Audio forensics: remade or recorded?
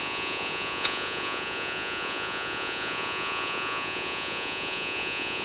remade